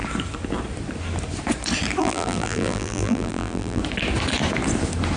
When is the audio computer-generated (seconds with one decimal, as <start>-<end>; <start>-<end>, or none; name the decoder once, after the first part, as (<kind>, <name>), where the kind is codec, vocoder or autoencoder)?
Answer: 2.0-3.8 (vocoder, BigVGAN v2)